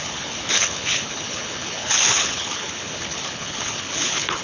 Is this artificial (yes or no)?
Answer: yes